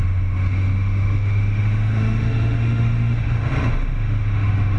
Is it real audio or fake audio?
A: fake